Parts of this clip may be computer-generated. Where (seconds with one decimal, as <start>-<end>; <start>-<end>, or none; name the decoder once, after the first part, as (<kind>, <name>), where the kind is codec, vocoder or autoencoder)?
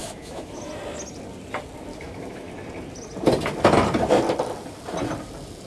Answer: 0.0-0.6 (autoencoder, DAC-VAE); 1.9-2.5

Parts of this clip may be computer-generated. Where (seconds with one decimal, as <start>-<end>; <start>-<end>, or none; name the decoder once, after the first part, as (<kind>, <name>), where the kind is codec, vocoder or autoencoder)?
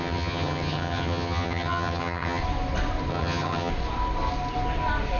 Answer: 0.0-2.4 (vocoder, HiFi-GAN); 3.1-3.7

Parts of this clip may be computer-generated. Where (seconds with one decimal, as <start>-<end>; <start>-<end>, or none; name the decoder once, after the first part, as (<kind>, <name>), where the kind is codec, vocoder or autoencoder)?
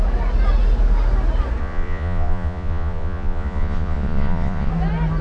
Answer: 1.6-4.7 (vocoder, Vocos)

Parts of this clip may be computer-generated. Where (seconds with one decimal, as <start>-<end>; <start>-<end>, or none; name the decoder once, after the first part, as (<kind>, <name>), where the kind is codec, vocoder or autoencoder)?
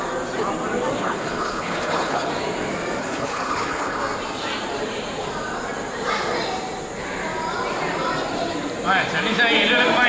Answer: 1.0-2.3 (codec, HILCodec); 3.0-4.0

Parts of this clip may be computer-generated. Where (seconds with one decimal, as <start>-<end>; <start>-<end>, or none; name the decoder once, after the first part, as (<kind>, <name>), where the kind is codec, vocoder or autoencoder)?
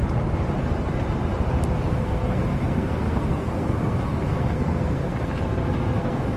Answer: 1.9-6.4 (codec, SNAC)